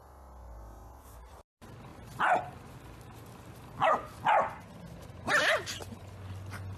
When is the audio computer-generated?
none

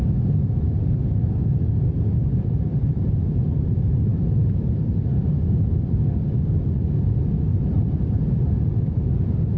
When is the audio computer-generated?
2.7-5.7 (vocoder, BigVGAN v2); 7.5-8.2

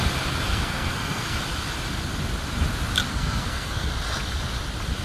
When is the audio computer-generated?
0.5-1.4 (codec, SNAC); 3.1-3.9